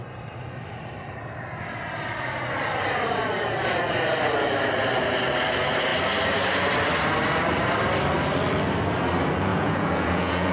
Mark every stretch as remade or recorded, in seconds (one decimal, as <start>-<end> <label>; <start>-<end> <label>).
0.0-9.5 recorded; 9.5-10.5 remade

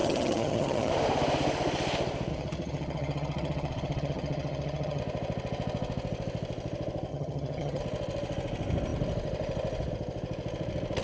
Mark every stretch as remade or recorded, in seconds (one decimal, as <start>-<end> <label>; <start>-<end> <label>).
0.0-0.9 remade; 0.9-2.3 recorded; 2.3-5.0 remade; 5.0-7.1 recorded; 7.1-7.8 remade; 7.8-11.0 recorded